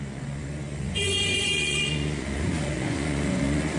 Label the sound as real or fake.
fake